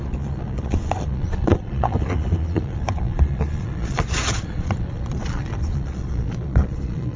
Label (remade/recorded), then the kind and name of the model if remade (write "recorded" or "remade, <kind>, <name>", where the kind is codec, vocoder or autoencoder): remade, vocoder, Vocos